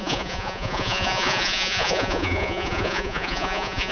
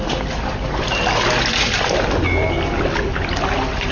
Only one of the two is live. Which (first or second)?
second